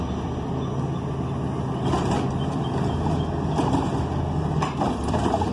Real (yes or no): yes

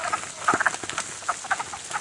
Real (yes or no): yes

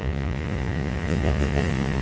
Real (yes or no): no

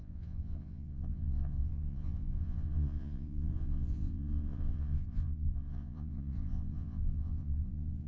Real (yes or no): no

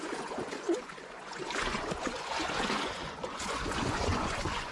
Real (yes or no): no